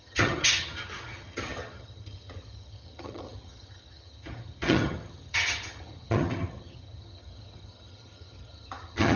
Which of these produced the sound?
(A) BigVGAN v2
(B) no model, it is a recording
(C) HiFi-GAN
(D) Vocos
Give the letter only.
C